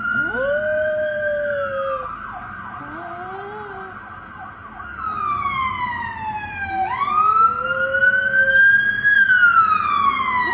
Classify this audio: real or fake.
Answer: real